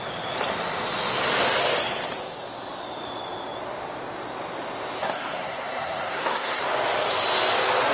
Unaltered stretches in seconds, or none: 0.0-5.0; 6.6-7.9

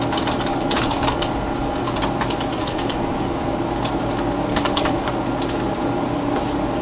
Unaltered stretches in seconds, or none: 0.0-0.5; 2.0-2.6; 3.5-4.5; 5.1-6.8

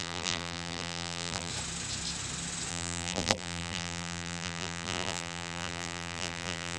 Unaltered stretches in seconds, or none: 1.5-2.7

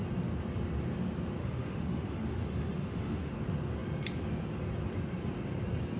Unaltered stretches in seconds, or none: 0.0-1.4; 3.3-6.0